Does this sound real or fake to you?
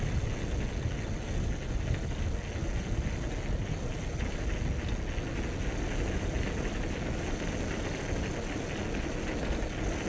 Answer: real